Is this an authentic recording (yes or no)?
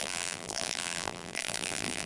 no